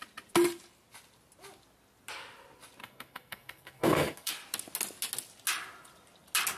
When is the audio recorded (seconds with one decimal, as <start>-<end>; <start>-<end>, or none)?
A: 0.0-2.8; 4.3-6.6